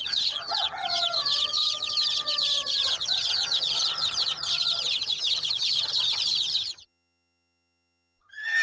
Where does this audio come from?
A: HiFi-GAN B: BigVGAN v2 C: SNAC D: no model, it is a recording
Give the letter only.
A